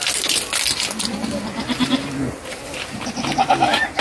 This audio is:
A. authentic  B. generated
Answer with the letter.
A